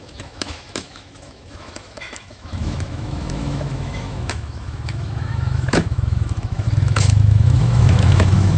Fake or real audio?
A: fake